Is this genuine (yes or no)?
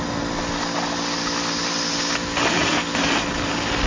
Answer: yes